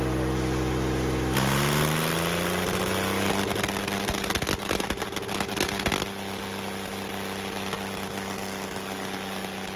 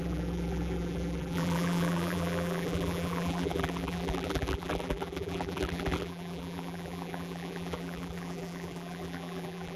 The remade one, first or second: second